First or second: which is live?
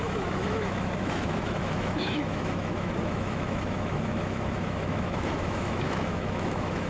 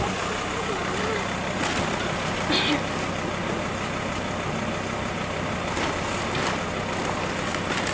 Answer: second